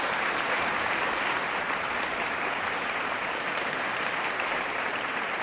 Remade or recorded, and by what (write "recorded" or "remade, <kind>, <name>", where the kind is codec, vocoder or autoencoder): remade, vocoder, BigVGAN v2